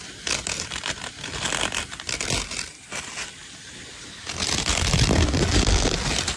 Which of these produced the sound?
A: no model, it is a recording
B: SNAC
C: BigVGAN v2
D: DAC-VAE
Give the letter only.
A